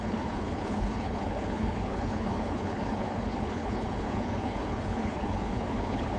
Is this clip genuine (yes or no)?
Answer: no